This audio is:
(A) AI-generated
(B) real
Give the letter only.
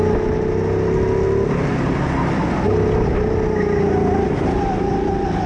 B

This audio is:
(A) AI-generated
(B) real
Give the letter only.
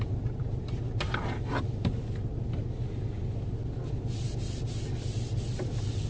B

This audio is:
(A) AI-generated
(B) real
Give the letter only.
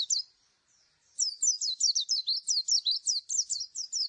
B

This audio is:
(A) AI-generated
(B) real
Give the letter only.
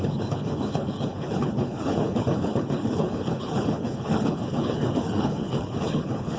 A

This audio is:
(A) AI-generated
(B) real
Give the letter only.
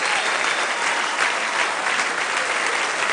B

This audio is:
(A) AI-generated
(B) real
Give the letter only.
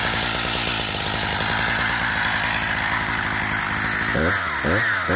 B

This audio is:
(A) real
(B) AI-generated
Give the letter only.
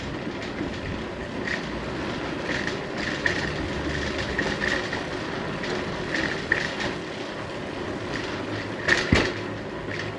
A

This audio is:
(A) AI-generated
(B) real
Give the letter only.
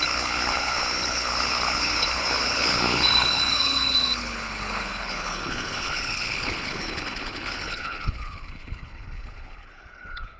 A